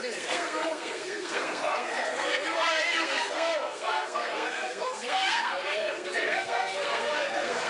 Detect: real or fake fake